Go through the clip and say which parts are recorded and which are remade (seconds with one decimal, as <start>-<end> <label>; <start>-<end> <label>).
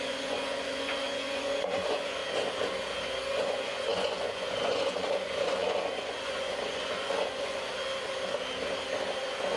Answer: 0.0-2.2 remade; 2.2-3.3 recorded; 3.3-7.7 remade; 7.7-9.2 recorded; 9.2-9.6 remade